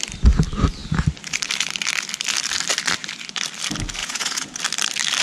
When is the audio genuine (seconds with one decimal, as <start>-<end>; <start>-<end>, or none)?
0.0-4.0; 4.6-5.2